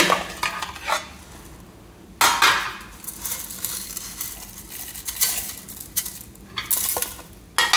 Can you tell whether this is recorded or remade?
recorded